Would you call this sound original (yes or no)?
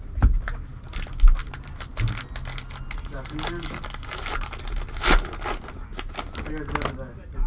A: yes